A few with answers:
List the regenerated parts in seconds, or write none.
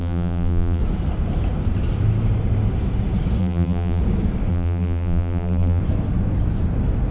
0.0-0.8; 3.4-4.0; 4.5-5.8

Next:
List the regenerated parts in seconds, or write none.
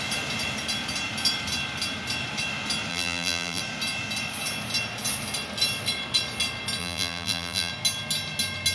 2.9-3.6; 6.8-7.7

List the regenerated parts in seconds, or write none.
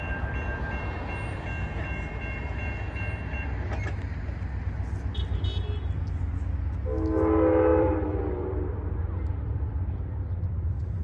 7.7-11.0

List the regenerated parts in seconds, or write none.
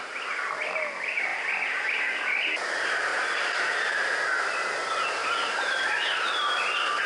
1.3-2.0; 3.1-4.7; 5.2-6.2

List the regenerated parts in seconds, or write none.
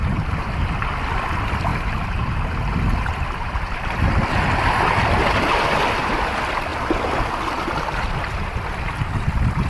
0.0-1.7; 5.4-6.7; 7.6-9.7